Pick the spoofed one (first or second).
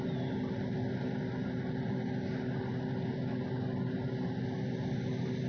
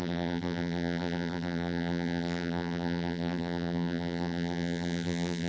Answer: second